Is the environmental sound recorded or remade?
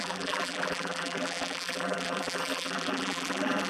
remade